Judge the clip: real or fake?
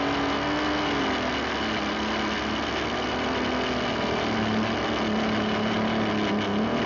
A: real